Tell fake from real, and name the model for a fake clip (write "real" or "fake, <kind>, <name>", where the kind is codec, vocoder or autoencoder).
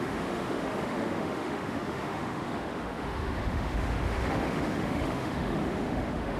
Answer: fake, autoencoder, DAC-VAE